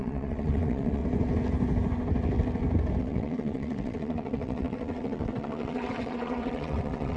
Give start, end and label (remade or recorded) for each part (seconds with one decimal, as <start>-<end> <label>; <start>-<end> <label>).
0.0-1.0 remade; 1.0-3.0 recorded; 3.0-7.2 remade